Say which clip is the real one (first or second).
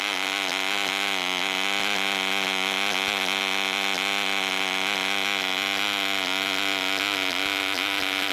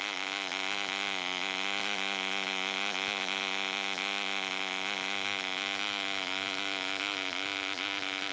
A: first